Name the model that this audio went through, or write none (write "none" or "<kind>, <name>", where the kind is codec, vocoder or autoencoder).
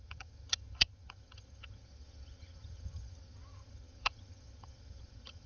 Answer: vocoder, HiFi-GAN